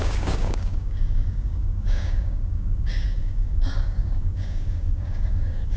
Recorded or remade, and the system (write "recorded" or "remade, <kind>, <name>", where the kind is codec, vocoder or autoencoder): remade, codec, DAC